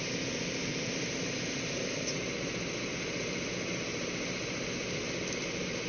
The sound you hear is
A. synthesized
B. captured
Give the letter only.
B